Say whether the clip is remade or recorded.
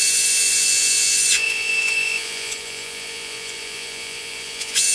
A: remade